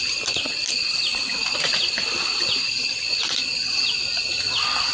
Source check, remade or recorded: recorded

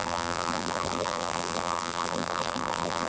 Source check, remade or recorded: remade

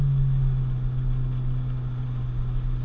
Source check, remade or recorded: recorded